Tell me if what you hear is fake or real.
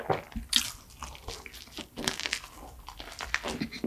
real